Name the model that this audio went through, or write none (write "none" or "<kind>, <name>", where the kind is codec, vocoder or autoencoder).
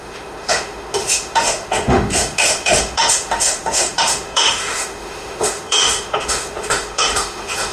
autoencoder, DAC-VAE